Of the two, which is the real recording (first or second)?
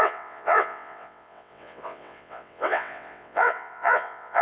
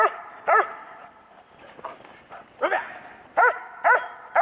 second